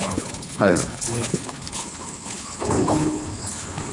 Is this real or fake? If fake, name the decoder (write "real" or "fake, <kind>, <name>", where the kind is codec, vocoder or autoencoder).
fake, codec, HILCodec